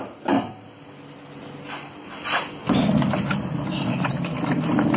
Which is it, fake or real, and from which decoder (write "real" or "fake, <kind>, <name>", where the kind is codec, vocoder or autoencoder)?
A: real